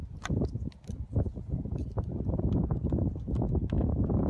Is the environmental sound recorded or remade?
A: recorded